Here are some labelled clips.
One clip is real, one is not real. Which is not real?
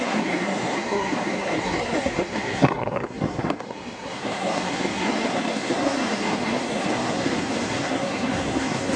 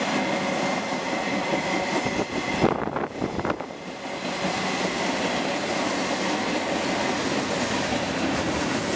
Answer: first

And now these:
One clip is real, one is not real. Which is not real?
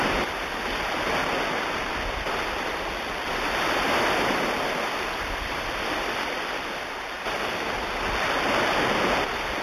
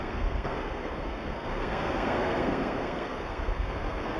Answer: second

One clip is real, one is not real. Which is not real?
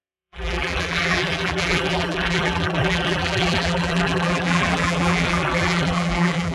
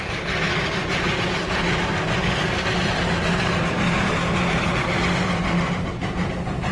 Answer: first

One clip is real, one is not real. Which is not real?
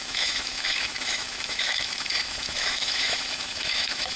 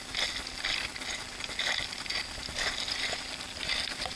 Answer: first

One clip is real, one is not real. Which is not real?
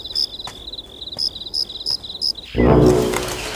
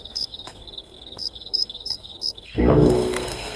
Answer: second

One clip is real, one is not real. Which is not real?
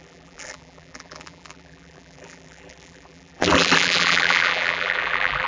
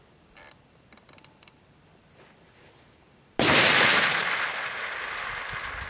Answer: first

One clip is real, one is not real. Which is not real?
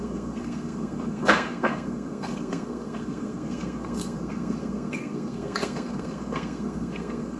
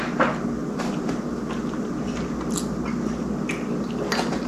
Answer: first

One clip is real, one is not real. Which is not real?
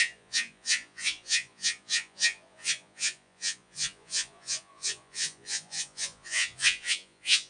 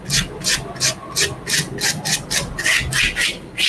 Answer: first